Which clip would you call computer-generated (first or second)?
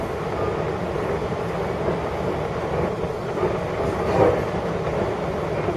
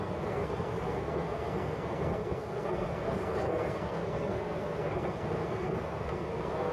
second